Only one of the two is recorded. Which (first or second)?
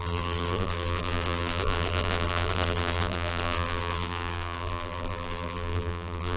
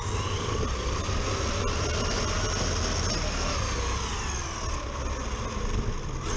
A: second